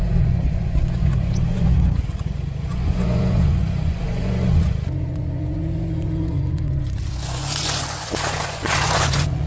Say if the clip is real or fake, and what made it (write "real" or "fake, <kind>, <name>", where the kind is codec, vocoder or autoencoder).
fake, vocoder, Vocos